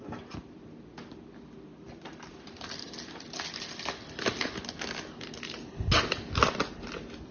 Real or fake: real